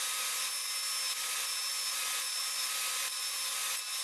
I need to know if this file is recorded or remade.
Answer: recorded